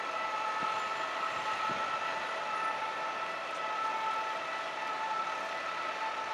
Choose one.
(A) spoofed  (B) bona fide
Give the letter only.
B